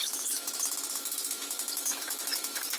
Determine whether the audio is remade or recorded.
remade